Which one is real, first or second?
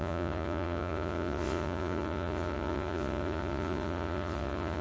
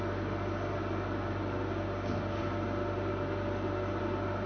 second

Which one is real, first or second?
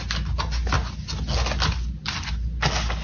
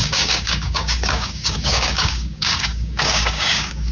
first